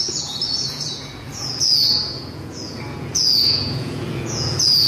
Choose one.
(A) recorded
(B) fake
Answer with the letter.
B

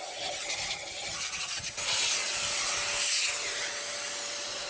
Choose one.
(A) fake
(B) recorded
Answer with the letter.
B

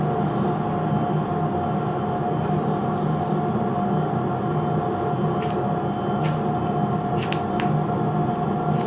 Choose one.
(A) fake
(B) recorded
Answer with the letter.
B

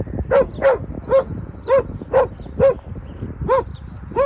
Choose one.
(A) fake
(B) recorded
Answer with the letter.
B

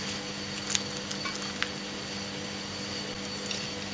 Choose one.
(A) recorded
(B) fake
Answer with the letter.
A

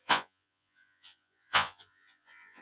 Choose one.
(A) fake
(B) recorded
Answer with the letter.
A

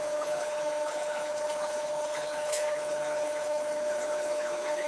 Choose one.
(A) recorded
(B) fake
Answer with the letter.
B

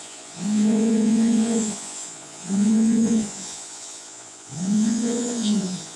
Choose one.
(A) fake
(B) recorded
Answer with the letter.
A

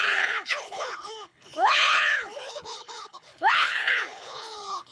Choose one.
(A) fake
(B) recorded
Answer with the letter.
A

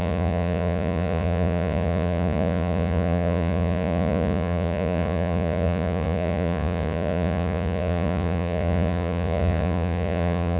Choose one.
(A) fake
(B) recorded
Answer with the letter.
A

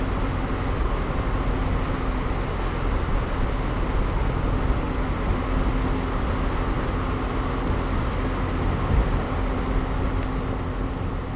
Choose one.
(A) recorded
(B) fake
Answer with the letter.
A